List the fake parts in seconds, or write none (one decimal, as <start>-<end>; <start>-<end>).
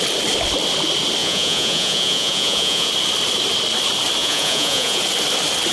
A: 1.2-2.9; 4.2-5.0